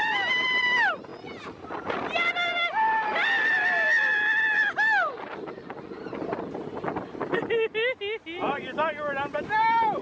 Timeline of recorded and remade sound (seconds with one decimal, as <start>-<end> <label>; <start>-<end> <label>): 0.0-10.0 recorded